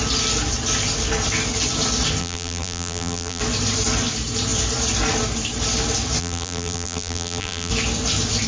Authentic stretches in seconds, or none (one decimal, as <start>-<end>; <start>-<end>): 0.0-2.2; 3.4-6.2; 7.7-8.5